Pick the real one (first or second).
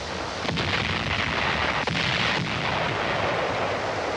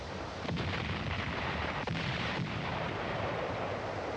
first